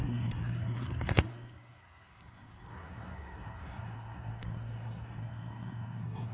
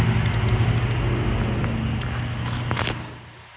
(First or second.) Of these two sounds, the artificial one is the first